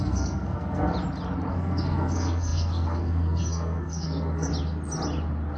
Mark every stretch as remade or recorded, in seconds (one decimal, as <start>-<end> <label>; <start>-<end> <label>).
0.0-0.9 remade; 0.9-1.5 recorded; 1.5-4.5 remade; 4.5-5.6 recorded